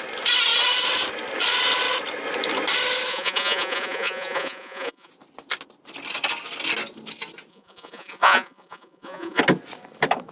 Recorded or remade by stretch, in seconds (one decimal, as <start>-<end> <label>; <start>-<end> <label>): 0.0-3.1 recorded; 3.1-5.1 remade; 5.1-7.5 recorded; 7.5-9.4 remade; 9.4-10.3 recorded